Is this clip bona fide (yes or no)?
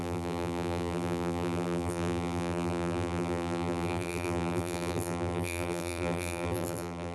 no